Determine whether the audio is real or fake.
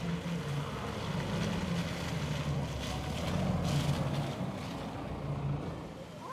real